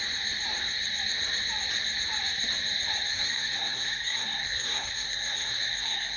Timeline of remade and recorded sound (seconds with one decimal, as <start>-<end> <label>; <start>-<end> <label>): 0.0-3.1 recorded; 3.1-6.2 remade